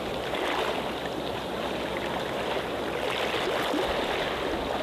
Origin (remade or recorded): recorded